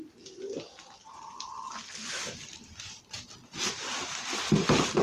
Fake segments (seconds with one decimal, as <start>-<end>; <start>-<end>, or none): none